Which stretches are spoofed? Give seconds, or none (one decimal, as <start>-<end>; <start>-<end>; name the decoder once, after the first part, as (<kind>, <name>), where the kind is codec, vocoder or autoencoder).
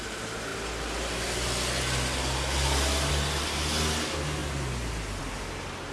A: none